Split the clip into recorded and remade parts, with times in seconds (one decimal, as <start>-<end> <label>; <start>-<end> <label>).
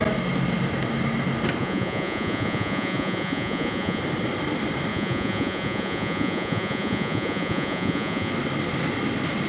0.0-1.6 recorded; 1.6-4.0 remade; 4.0-4.9 recorded; 4.9-8.3 remade; 8.3-9.5 recorded